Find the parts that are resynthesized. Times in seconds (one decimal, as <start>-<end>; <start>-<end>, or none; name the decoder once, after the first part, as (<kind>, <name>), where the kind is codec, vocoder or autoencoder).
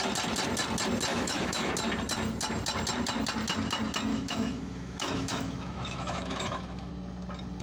1.1-1.7 (autoencoder, DAC-VAE); 4.1-6.9